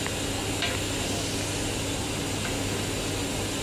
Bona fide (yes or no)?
yes